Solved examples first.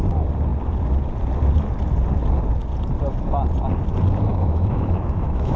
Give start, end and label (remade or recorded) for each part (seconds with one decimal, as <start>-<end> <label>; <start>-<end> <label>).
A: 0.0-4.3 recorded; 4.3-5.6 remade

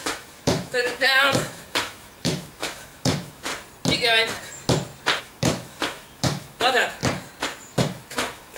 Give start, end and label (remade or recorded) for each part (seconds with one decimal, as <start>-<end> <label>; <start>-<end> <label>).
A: 0.0-3.5 remade; 3.5-5.2 recorded; 5.2-7.0 remade; 7.0-7.6 recorded; 7.6-8.6 remade

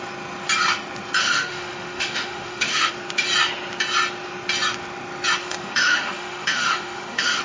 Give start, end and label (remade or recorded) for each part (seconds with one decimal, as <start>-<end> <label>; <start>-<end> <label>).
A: 0.0-1.2 recorded; 1.2-2.9 remade; 2.9-5.4 recorded; 5.4-7.4 remade

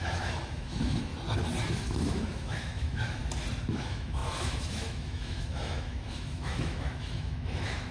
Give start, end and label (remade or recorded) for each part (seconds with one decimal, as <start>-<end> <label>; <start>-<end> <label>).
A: 0.0-1.1 remade; 1.1-1.7 recorded; 1.7-3.2 remade; 3.2-3.7 recorded; 3.7-7.9 remade